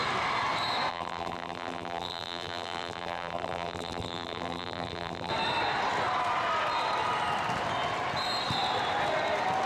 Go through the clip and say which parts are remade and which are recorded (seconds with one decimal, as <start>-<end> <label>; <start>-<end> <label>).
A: 0.0-0.9 recorded; 0.9-5.3 remade; 5.3-9.7 recorded